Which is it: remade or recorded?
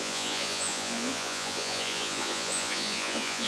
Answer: remade